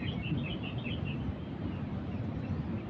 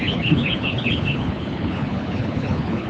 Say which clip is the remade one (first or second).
second